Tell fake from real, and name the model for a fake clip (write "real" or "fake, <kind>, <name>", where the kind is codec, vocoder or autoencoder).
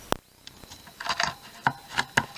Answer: real